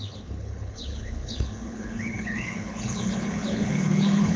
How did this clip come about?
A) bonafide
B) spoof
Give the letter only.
B